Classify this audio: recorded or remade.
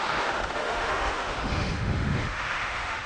remade